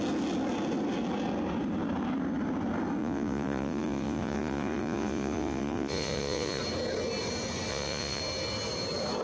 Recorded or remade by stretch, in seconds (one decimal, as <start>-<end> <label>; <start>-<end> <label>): 0.0-3.0 recorded; 3.0-6.6 remade; 6.6-7.7 recorded; 7.7-8.2 remade; 8.2-9.2 recorded